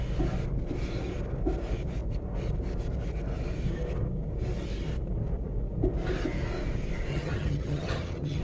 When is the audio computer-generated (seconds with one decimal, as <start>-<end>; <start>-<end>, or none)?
7.1-8.4